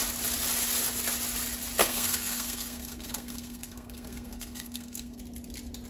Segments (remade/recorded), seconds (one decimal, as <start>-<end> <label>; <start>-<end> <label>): 0.0-1.8 recorded; 1.8-5.2 remade; 5.2-5.9 recorded